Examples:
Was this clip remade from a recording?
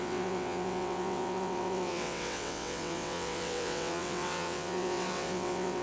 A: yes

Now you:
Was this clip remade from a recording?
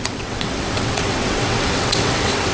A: yes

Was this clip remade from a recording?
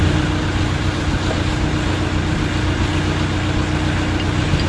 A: no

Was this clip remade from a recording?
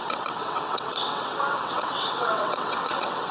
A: yes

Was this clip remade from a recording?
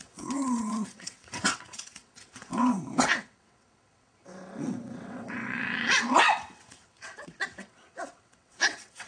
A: yes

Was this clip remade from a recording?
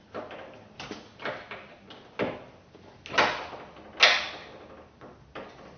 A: no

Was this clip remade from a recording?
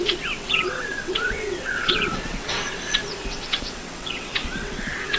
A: yes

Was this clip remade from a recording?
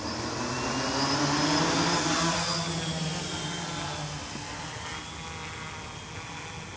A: no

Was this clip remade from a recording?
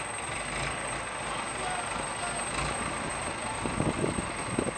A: no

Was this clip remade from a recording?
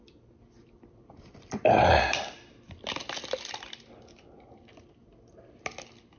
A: no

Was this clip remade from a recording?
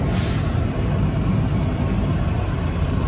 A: no